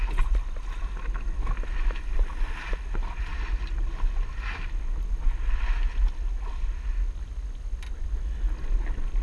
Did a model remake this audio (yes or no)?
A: no